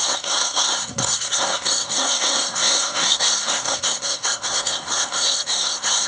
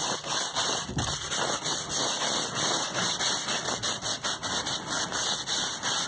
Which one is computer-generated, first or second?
first